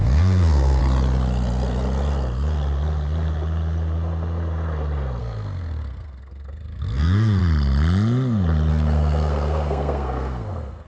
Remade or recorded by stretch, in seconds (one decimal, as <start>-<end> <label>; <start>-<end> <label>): 0.0-0.8 remade; 0.8-5.2 recorded; 5.2-7.4 remade; 7.4-8.7 recorded; 8.7-10.9 remade